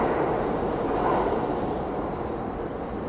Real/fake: real